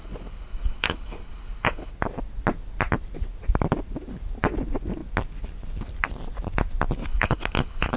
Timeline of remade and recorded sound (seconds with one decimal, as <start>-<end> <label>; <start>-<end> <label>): 0.0-1.9 remade; 1.9-7.0 recorded; 7.0-8.0 remade